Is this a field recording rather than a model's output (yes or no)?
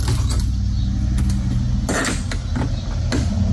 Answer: yes